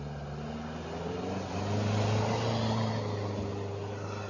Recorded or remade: recorded